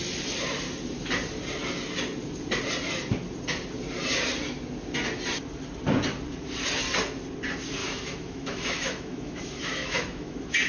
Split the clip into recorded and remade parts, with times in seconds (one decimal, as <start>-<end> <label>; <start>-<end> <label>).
0.0-7.8 recorded; 7.8-10.7 remade